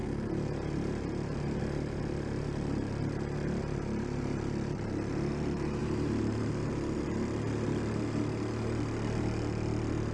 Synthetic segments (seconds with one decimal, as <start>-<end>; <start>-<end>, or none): 5.8-6.7